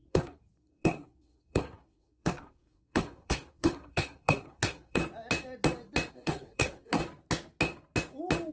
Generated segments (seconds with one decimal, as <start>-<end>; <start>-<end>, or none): 0.0-5.0; 6.1-7.0